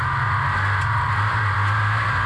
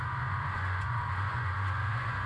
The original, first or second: first